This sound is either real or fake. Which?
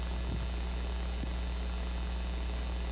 real